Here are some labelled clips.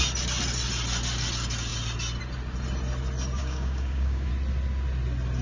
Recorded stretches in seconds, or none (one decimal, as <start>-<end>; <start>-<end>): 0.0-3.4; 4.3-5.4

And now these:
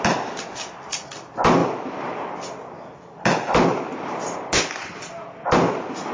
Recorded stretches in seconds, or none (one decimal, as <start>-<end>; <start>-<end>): 0.0-6.1

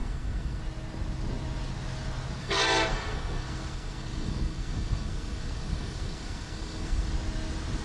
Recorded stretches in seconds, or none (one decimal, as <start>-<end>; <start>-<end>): 0.6-2.4; 7.1-7.8

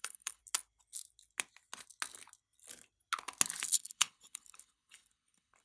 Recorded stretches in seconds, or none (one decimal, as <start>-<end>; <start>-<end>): 0.4-3.7